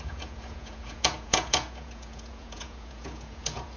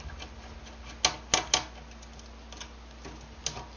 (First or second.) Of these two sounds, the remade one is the first